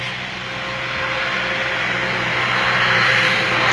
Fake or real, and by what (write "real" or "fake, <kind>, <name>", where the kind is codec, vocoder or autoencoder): real